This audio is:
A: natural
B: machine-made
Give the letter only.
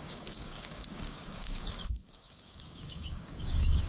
B